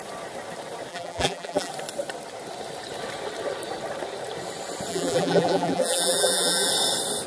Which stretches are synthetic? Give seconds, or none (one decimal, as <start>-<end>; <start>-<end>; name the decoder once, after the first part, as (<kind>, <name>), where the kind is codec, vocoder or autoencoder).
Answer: 0.9-1.7 (vocoder, BigVGAN v2); 4.9-6.7